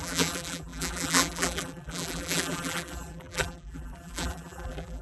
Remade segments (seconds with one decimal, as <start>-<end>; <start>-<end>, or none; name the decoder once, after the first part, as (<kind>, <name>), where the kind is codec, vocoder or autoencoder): 0.0-5.0 (vocoder, BigVGAN v2)